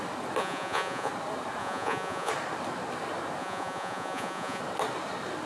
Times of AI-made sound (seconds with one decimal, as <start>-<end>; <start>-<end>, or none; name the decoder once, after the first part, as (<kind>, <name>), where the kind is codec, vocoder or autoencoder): 0.4-1.1 (vocoder, Vocos); 1.6-2.3; 3.4-4.6